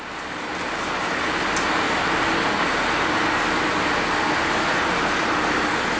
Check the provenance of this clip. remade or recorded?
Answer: recorded